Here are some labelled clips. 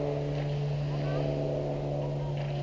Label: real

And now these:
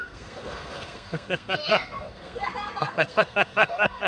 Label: fake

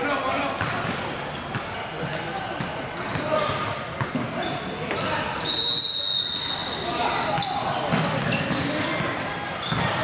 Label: real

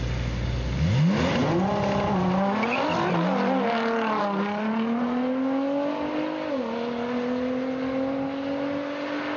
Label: real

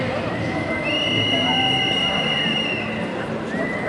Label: real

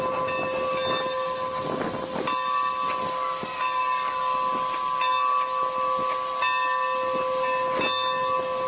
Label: real